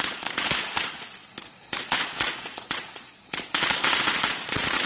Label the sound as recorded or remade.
remade